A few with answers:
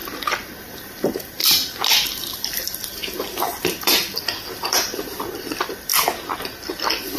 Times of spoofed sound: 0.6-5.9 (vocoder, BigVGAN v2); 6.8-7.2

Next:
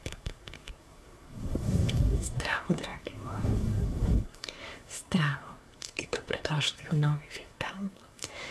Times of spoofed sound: 0.0-8.5 (codec, SNAC)

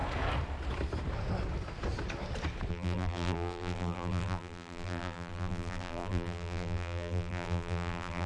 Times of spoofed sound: 2.7-8.3 (vocoder, BigVGAN v2)

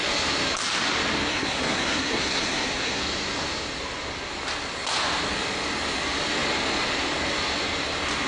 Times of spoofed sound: 1.3-3.0 (codec, SNAC)

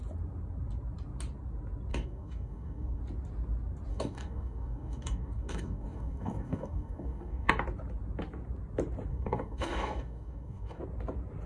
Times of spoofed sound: 1.9-3.0 (codec, DAC); 3.9-7.5; 9.1-10.8